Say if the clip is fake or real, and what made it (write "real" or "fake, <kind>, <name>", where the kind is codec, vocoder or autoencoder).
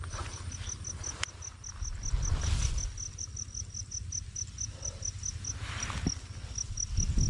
real